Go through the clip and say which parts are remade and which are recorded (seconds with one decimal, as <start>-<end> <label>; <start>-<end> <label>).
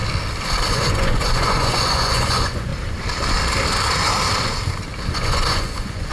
0.0-0.7 recorded; 0.7-2.7 remade; 2.7-5.1 recorded; 5.1-6.1 remade